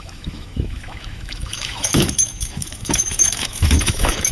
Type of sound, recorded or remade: remade